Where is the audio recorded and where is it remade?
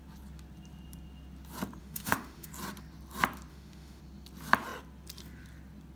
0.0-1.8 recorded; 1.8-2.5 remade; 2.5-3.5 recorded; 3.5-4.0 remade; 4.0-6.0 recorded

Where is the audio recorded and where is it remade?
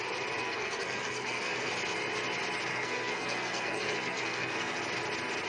0.0-0.4 recorded; 0.4-1.7 remade; 1.7-2.7 recorded; 2.7-4.8 remade; 4.8-5.5 recorded